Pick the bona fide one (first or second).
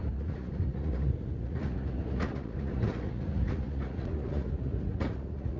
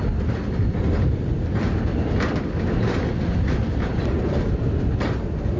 second